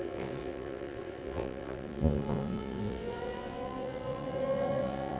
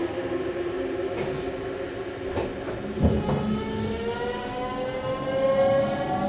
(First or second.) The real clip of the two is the second